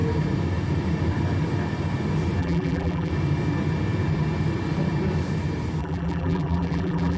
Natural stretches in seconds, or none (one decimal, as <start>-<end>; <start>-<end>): 0.0-2.4; 3.1-5.8

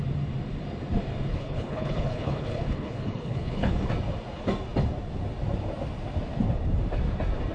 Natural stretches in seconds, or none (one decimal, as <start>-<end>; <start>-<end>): 0.0-1.3; 3.9-7.5